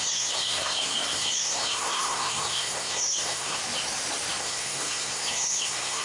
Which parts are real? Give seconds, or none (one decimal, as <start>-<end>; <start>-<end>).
3.6-4.4